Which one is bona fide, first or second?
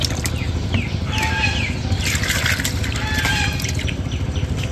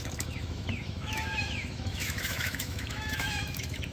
first